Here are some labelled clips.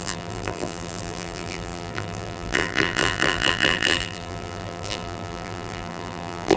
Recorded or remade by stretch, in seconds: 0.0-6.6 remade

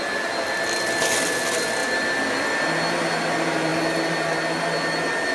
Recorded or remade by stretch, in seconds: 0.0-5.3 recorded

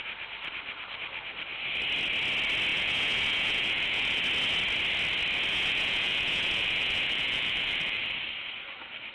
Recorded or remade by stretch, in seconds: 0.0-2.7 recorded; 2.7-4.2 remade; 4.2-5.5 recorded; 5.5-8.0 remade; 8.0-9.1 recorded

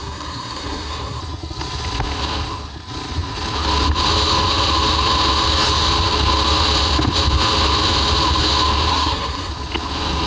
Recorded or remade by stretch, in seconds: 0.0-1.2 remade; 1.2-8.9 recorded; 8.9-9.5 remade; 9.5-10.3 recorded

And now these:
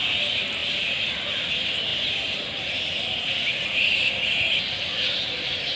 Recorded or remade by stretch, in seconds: 0.0-5.8 recorded